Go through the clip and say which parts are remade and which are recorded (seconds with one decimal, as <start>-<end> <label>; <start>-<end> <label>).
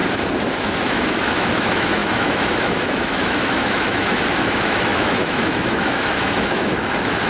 0.0-0.6 recorded; 0.6-7.3 remade